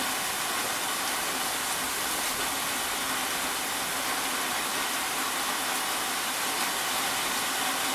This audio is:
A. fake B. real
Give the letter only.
B